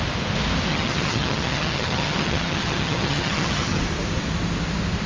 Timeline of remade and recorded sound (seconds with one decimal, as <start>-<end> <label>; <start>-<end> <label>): 0.0-0.7 recorded; 0.7-3.8 remade; 3.8-5.1 recorded